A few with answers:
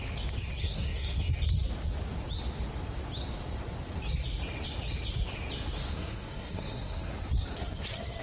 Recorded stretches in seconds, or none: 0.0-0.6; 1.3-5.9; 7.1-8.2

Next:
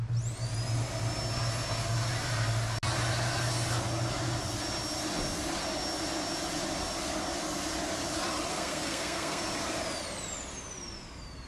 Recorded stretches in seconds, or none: 0.0-8.5; 9.4-11.5